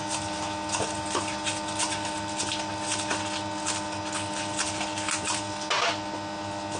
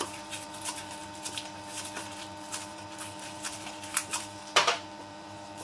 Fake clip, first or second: second